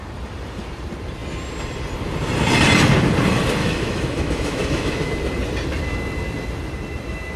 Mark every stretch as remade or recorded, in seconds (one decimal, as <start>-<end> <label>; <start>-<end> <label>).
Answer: 0.0-3.6 recorded; 3.6-5.1 remade; 5.1-7.4 recorded